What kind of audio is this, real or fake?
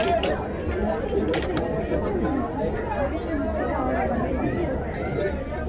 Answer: real